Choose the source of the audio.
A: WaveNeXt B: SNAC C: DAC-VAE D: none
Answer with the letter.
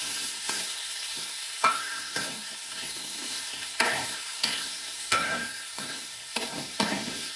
B